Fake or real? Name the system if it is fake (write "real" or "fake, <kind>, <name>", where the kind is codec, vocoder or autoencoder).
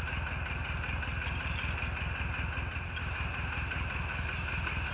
real